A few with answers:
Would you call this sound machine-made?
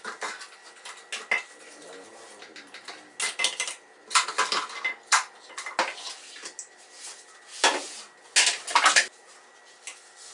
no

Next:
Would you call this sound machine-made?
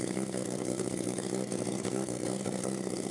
yes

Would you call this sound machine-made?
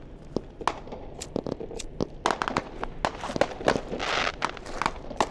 no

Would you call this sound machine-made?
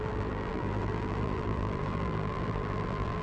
yes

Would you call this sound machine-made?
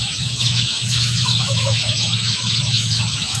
yes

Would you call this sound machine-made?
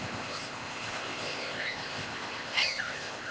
yes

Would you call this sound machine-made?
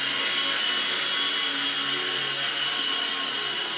no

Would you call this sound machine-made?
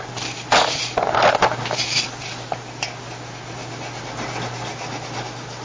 no